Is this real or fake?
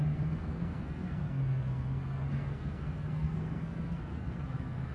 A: fake